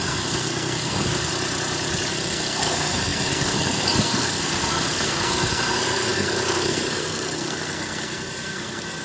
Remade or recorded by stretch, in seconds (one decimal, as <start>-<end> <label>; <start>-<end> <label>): 0.0-1.3 remade; 1.3-2.1 recorded; 2.1-9.0 remade